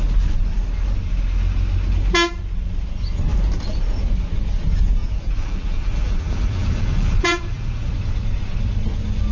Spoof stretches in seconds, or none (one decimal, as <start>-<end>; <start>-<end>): 5.0-7.9

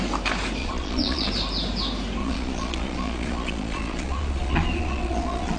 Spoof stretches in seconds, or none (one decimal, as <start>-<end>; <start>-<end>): 0.6-1.3; 2.2-5.6

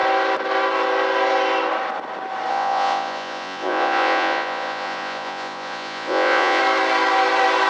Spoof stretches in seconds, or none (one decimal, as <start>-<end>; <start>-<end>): 2.5-6.6

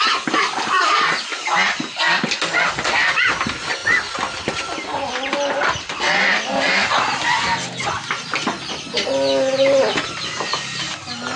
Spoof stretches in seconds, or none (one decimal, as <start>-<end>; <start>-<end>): none

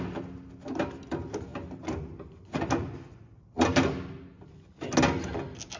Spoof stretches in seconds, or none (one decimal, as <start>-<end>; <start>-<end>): none

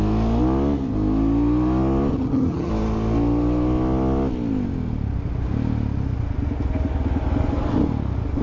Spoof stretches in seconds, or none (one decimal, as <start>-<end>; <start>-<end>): 2.1-2.7

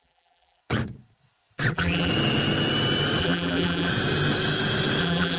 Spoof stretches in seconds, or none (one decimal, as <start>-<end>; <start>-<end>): 0.0-0.6; 1.7-2.1; 3.2-3.9; 5.0-5.4